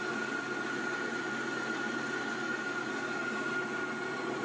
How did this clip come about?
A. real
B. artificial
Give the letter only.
A